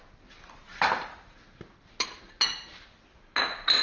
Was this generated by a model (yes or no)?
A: no